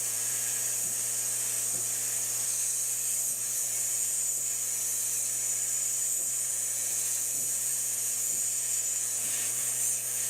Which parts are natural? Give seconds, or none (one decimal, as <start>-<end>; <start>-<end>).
0.6-3.4; 5.0-6.0